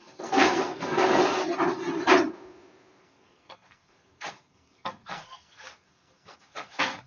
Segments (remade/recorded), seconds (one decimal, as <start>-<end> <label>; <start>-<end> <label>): 0.0-1.2 remade; 1.2-3.0 recorded; 3.0-7.1 remade